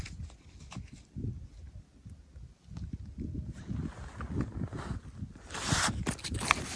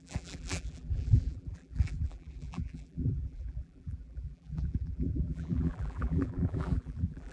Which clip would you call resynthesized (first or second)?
second